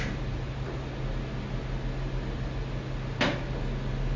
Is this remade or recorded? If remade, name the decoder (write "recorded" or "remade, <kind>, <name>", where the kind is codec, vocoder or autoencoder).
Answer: recorded